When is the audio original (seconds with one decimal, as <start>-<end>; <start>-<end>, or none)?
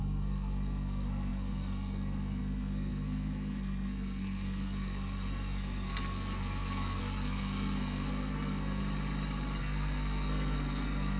8.8-9.6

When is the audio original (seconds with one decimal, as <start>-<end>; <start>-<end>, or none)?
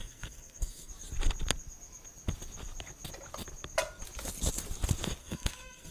0.9-5.2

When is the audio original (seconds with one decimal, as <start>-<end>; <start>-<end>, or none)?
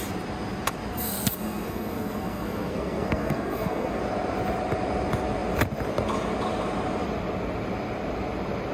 0.0-0.9; 4.0-8.7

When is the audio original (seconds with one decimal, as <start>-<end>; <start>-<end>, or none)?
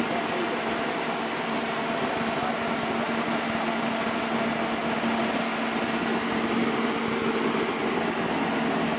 0.0-9.0